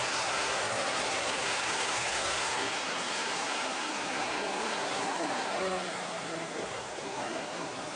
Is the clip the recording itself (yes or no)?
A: no